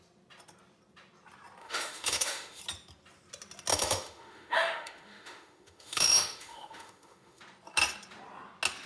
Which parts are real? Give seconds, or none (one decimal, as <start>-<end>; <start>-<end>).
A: 0.0-1.6; 2.6-3.7; 7.4-8.9